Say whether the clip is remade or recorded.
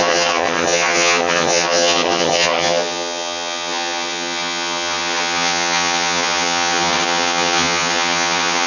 remade